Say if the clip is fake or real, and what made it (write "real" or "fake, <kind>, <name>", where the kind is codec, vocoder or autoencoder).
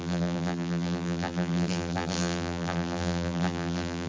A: fake, vocoder, BigVGAN v2